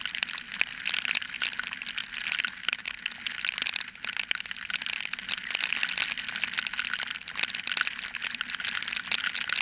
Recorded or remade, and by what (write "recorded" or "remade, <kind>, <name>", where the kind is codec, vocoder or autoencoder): recorded